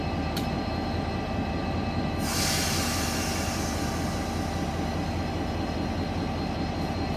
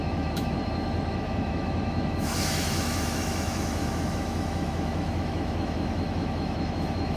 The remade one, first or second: second